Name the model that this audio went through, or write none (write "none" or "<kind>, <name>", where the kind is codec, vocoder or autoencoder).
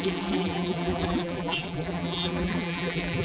vocoder, BigVGAN v2